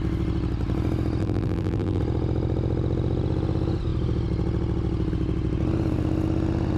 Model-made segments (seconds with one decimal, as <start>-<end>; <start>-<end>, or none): 1.2-2.0